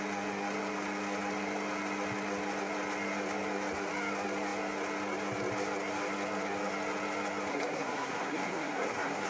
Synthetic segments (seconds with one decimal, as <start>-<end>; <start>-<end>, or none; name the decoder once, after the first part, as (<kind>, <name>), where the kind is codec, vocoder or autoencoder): 7.5-9.3 (codec, SNAC)